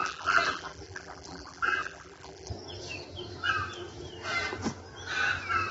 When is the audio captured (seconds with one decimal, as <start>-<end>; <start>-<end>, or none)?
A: 2.5-5.7